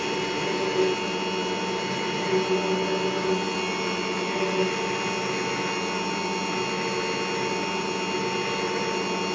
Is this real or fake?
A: real